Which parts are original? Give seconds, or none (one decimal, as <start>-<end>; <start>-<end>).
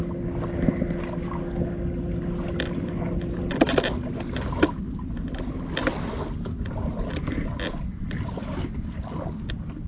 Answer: 0.0-9.9